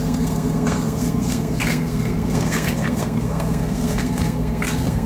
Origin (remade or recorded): remade